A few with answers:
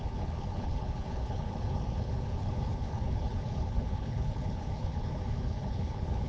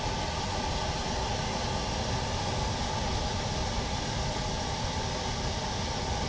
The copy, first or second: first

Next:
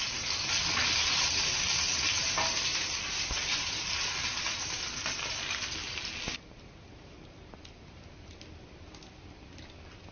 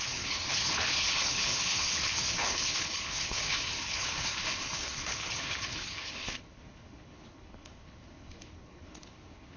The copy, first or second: second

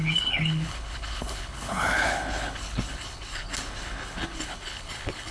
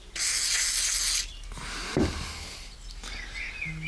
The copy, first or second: first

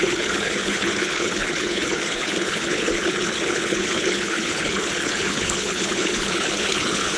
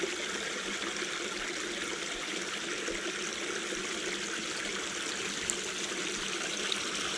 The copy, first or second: first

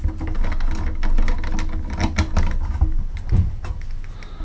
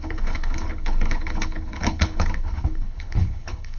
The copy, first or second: second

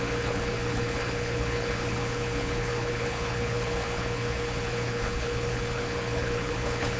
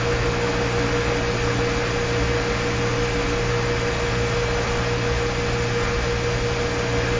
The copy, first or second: first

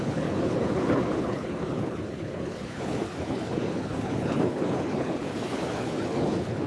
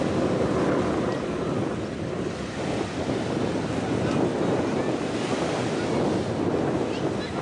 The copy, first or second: first